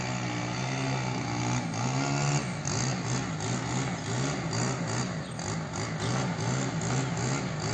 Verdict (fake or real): real